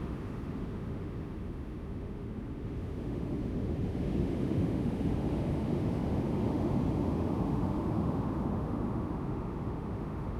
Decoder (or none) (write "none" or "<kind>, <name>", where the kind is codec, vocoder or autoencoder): autoencoder, DAC-VAE